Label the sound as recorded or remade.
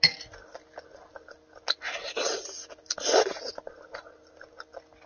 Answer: recorded